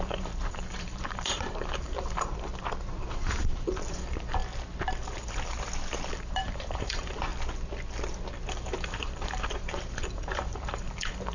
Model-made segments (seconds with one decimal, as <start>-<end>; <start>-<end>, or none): 0.0-2.5; 3.1-4.4; 6.1-7.3; 8.5-11.3